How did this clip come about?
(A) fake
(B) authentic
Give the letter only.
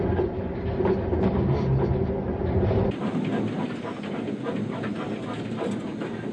B